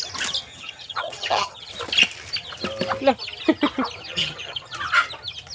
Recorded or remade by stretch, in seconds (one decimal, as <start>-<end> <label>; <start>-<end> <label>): 0.0-0.5 recorded; 0.5-1.7 remade; 1.7-4.1 recorded; 4.1-4.7 remade; 4.7-5.5 recorded